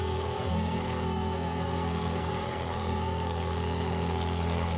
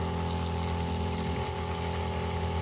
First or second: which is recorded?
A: second